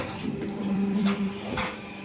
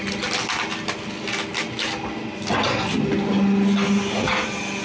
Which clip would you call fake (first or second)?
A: first